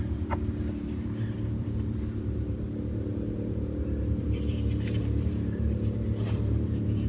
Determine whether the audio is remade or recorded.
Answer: remade